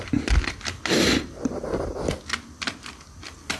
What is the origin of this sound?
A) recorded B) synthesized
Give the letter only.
A